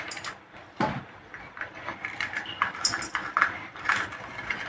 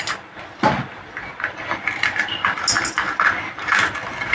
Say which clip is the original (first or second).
second